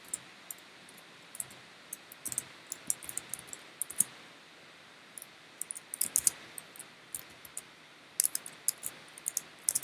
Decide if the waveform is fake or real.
real